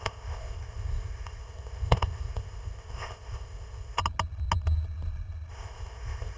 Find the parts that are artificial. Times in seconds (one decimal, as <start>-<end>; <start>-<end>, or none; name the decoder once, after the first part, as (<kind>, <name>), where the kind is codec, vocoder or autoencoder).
0.0-4.0 (codec, ZipCodec); 5.5-6.4